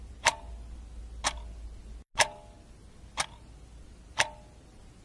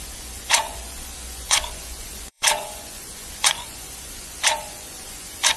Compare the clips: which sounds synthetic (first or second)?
second